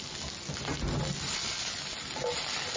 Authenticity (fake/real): real